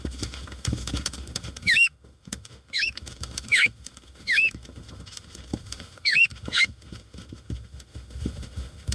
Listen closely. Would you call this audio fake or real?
fake